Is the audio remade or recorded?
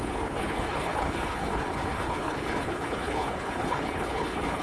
remade